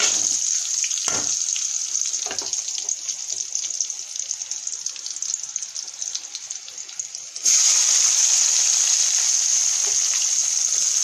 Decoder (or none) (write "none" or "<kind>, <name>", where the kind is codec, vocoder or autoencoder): none